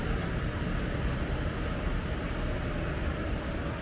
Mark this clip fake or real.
real